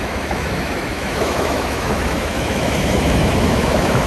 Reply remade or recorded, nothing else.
remade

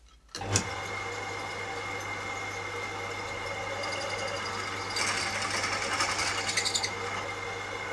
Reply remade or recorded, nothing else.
recorded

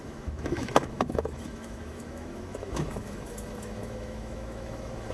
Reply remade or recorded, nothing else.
remade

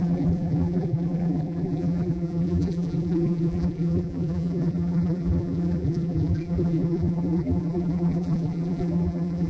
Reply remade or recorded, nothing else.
remade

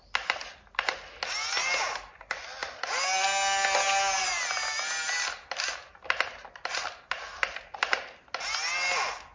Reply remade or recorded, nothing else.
recorded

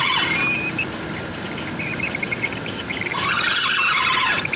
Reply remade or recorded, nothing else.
recorded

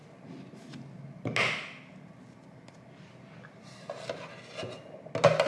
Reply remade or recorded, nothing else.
recorded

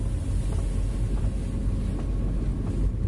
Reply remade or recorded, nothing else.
recorded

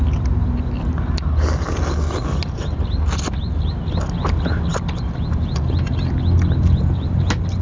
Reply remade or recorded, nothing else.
recorded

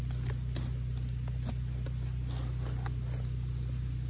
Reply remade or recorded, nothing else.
recorded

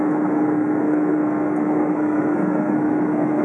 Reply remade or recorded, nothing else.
remade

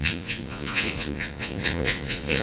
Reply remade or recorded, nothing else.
remade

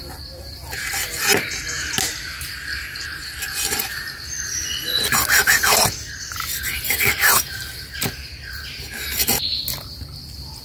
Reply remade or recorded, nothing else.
recorded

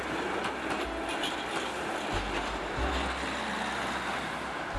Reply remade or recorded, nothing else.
recorded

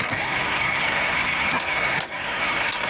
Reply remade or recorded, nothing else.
remade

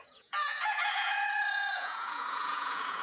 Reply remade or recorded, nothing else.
remade